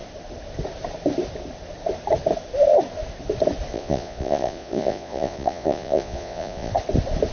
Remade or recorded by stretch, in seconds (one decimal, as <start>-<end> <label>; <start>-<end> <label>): 0.0-3.7 recorded; 3.7-6.7 remade; 6.7-7.3 recorded